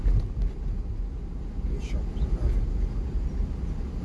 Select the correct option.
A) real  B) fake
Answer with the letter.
A